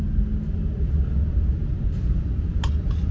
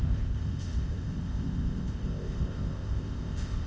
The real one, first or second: first